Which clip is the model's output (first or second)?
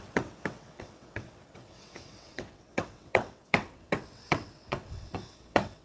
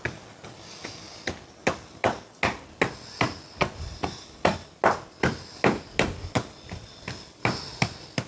first